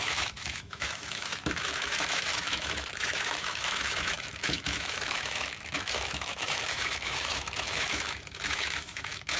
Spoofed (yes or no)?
yes